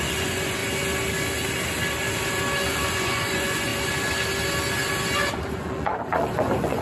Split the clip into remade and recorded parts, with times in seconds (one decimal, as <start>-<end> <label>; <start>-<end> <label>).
0.0-0.6 remade; 0.6-2.9 recorded; 2.9-3.7 remade; 3.7-5.5 recorded; 5.5-6.8 remade